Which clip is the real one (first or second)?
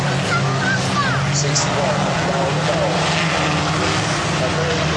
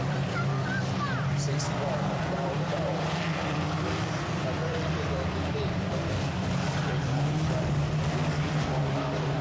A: first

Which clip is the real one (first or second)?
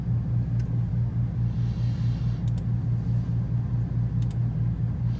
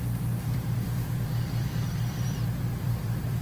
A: first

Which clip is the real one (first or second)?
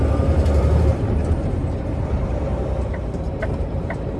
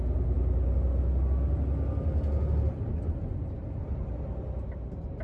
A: second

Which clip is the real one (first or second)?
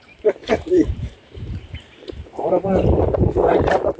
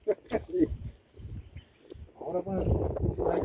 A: second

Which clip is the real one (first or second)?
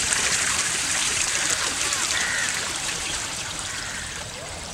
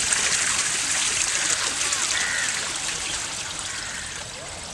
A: second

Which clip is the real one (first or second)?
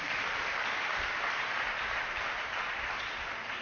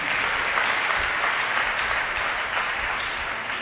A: second